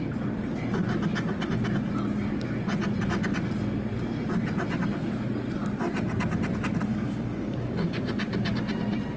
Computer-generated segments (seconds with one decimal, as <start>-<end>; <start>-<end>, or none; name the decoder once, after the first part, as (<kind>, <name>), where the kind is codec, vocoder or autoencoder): 6.9-8.0 (codec, DAC)